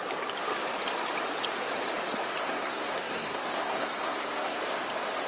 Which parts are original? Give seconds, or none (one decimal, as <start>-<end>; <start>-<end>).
0.0-2.4; 4.6-5.3